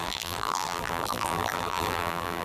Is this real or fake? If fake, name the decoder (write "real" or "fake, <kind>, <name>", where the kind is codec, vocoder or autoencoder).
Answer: fake, vocoder, BigVGAN v2